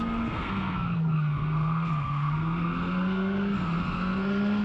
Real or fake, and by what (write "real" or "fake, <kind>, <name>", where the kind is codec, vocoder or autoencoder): fake, codec, SNAC